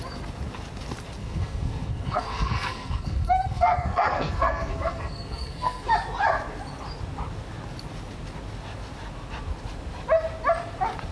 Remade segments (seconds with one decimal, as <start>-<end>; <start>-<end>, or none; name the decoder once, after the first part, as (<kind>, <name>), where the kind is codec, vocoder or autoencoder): 1.2-5.9 (codec, SNAC)